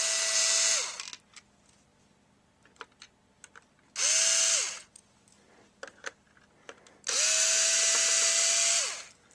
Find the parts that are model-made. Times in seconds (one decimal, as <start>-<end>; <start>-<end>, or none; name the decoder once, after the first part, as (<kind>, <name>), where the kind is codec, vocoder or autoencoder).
none

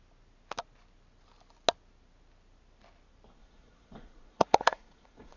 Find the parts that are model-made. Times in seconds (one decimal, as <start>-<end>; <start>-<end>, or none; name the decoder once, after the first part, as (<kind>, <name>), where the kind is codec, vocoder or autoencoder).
3.4-5.4 (vocoder, Vocos)